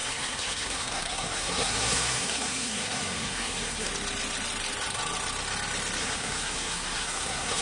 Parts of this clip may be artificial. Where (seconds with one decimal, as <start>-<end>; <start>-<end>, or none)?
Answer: 0.0-3.9; 6.0-7.6